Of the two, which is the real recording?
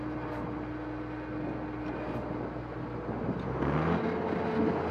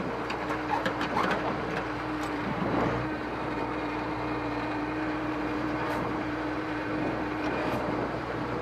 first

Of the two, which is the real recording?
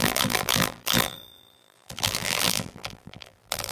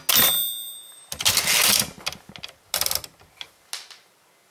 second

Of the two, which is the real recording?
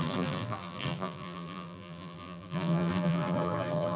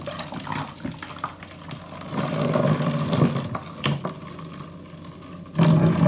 second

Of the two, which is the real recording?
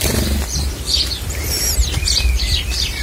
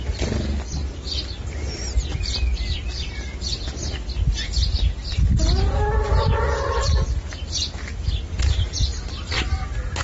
second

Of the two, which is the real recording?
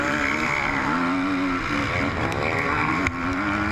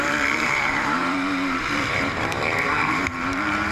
first